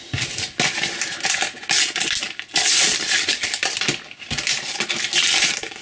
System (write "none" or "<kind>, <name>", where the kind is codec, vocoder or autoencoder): none